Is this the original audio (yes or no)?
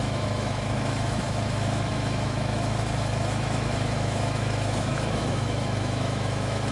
no